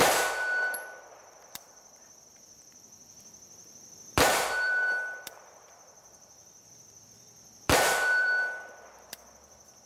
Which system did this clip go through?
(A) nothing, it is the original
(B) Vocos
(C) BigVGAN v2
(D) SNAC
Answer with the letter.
C